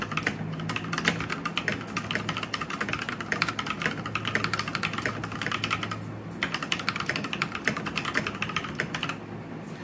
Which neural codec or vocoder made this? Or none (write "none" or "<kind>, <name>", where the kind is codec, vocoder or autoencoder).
none